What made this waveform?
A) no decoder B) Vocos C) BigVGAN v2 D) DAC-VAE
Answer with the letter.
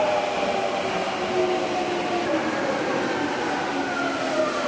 A